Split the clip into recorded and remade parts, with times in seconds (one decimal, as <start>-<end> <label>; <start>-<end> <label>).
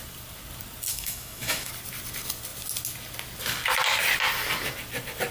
0.0-0.9 recorded; 0.9-1.7 remade; 1.7-5.3 recorded